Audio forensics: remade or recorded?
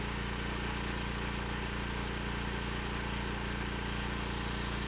recorded